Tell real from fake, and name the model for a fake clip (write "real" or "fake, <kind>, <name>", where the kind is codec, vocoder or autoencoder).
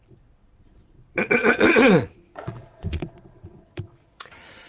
fake, vocoder, Vocos